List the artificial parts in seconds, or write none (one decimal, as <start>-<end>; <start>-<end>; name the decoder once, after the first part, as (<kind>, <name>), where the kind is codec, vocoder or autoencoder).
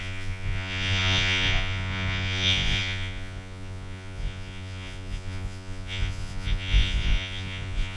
0.0-8.0 (vocoder, Vocos)